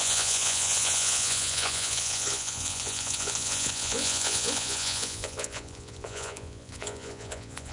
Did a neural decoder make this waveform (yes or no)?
yes